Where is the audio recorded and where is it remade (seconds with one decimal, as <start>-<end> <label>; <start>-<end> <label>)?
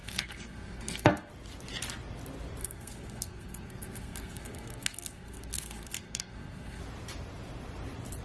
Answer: 0.0-1.3 remade; 1.3-2.6 recorded; 2.6-6.8 remade; 6.8-8.2 recorded